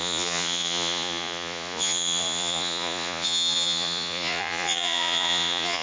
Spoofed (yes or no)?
yes